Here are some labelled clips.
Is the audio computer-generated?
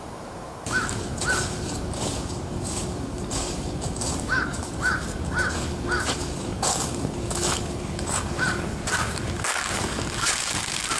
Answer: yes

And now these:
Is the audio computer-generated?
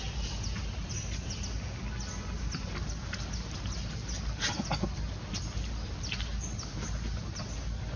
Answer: no